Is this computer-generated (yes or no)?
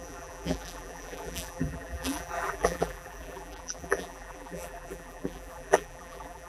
yes